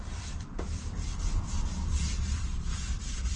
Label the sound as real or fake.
fake